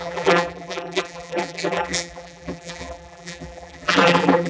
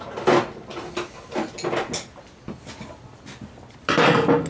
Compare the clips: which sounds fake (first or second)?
first